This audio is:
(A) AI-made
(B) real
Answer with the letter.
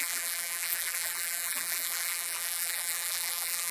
A